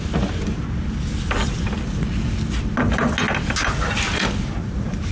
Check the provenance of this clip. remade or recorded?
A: recorded